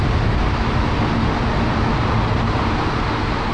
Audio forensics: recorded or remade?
recorded